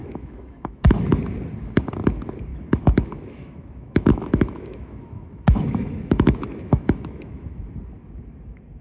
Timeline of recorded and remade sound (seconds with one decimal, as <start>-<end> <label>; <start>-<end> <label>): 0.0-1.2 remade; 1.2-2.5 recorded; 2.5-7.7 remade; 7.7-8.8 recorded